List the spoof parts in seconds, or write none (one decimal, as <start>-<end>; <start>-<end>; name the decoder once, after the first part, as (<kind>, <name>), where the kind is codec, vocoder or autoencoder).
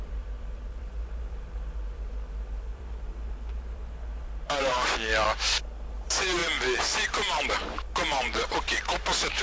0.0-5.1 (vocoder, BigVGAN v2); 5.9-9.4